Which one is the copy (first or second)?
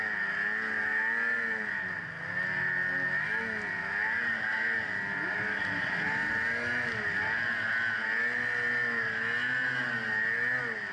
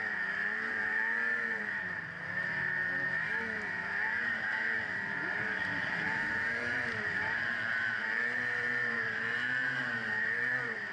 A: second